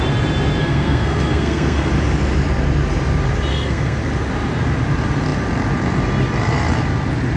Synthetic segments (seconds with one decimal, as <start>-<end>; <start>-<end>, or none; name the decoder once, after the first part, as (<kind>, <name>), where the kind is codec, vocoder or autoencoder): 0.6-1.9 (codec, SNAC); 3.5-4.0

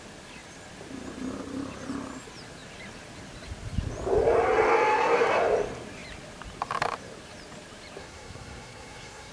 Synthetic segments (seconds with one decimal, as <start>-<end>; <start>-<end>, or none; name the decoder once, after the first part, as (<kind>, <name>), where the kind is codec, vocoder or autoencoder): 8.0-9.3 (codec, SNAC)

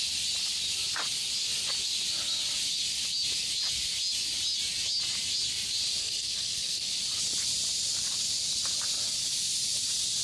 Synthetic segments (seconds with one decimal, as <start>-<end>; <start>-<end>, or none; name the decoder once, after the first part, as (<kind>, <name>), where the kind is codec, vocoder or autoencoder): 6.0-6.9 (codec, SNAC)